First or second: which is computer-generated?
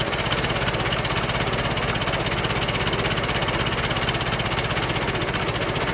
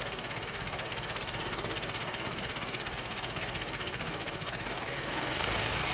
second